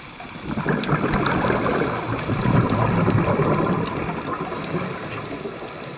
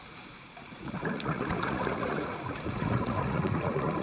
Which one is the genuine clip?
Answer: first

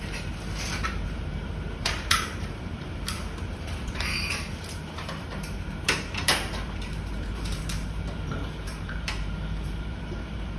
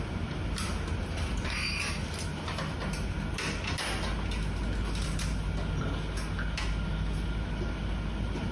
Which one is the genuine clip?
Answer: second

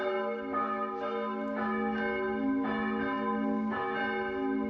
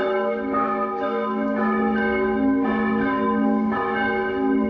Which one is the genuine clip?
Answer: first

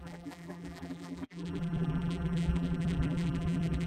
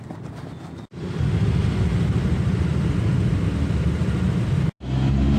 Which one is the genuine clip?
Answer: second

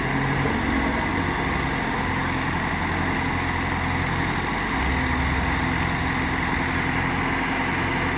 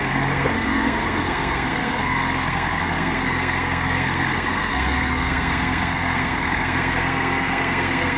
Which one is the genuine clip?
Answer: first